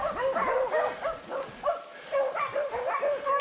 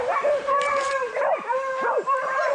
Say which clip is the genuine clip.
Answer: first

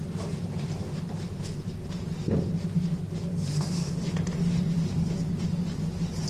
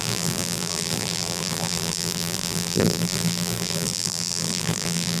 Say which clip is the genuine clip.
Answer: first